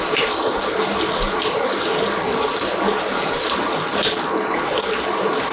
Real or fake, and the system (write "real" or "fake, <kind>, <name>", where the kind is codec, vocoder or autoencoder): real